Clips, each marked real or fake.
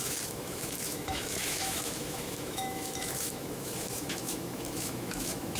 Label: fake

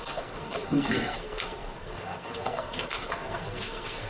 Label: fake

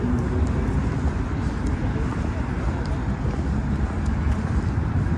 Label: real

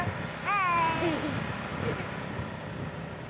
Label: real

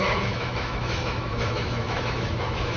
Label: fake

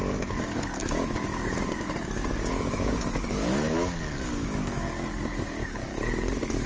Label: fake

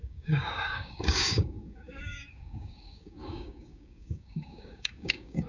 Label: fake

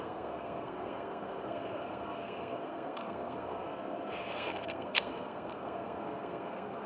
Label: fake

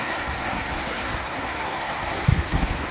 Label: fake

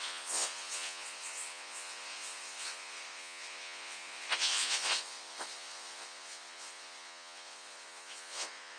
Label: fake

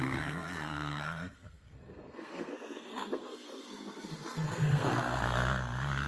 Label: fake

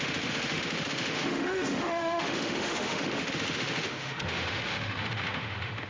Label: fake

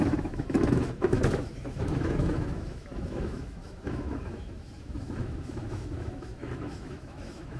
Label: fake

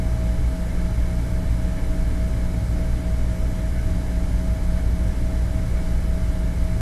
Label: real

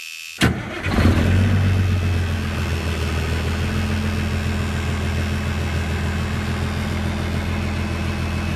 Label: real